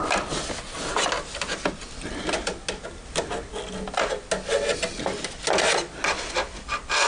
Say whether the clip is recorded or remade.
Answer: recorded